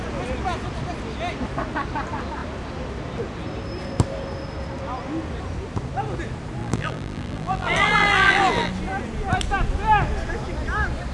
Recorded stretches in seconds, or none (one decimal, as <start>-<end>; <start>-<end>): 0.0-6.6; 8.7-11.1